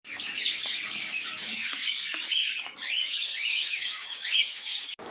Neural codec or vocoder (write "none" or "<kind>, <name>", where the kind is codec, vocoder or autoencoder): codec, DAC